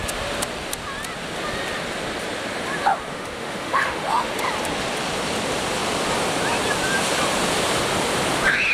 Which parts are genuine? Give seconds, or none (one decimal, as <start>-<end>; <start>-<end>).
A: 0.0-3.1; 4.3-8.7